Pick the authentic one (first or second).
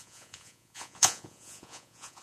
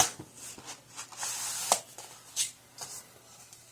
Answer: second